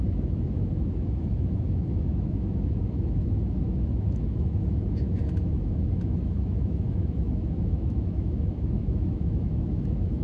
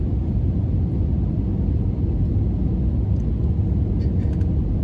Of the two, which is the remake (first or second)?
first